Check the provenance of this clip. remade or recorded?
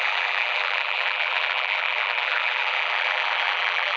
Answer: remade